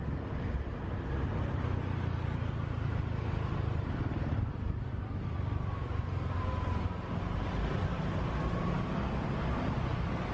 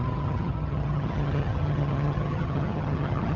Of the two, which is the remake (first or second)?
second